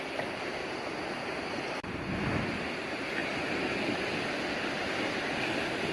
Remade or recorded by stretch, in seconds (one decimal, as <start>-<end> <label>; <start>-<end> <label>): 0.0-5.9 recorded